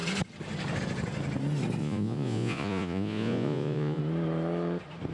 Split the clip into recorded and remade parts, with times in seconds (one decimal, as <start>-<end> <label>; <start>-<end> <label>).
0.0-1.8 recorded; 1.8-4.0 remade; 4.0-5.1 recorded